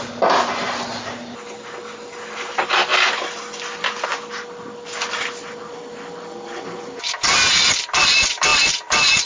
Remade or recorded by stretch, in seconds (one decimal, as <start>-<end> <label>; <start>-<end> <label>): 0.0-9.3 recorded